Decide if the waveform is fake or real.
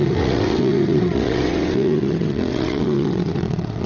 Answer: fake